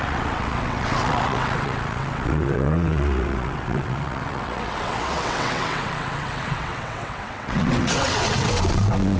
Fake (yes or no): yes